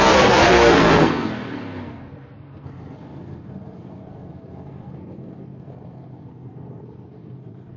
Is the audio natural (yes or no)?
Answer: no